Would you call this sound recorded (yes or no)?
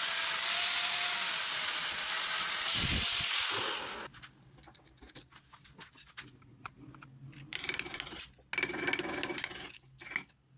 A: yes